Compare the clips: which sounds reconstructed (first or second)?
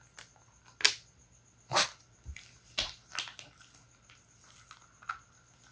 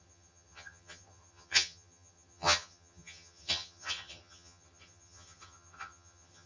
second